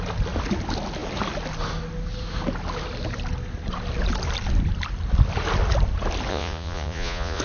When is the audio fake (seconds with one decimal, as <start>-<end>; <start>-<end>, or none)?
6.3-7.4